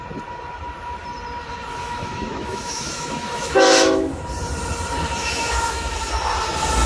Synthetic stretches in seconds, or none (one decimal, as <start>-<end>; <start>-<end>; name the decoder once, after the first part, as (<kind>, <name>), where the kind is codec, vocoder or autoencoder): 1.8-4.2 (autoencoder, DAC-VAE); 5.2-6.1